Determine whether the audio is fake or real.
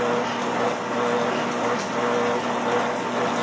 real